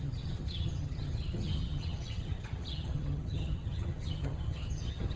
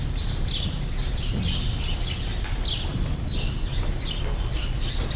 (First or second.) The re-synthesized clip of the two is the first